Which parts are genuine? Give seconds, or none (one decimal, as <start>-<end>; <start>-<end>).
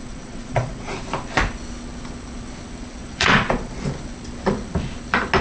1.0-3.0; 3.7-5.4